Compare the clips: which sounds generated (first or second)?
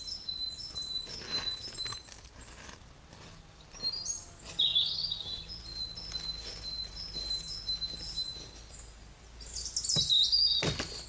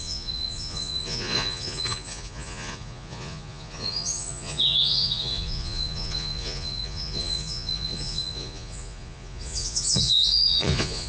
second